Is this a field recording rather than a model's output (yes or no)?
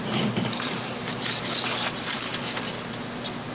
no